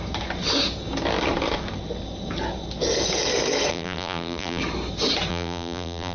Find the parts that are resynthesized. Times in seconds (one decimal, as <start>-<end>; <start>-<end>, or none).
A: 3.7-4.6; 5.3-6.1